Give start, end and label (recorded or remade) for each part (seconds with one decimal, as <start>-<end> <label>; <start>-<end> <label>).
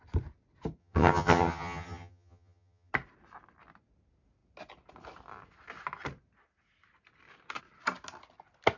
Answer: 0.0-0.8 recorded; 0.8-2.9 remade; 2.9-8.8 recorded